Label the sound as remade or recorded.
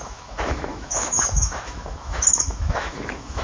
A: remade